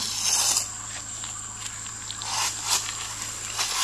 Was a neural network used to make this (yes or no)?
no